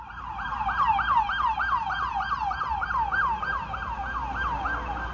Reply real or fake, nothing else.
real